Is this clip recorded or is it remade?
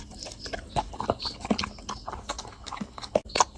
recorded